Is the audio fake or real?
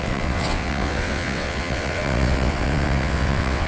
fake